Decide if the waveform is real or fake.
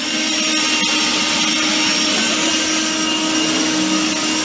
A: real